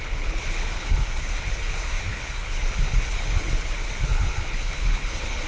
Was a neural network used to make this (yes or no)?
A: yes